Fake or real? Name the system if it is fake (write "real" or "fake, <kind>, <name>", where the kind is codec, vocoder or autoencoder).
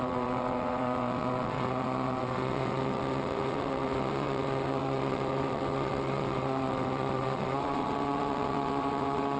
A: fake, vocoder, WaveNeXt